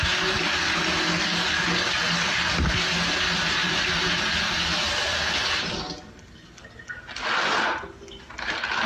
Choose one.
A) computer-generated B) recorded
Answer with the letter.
B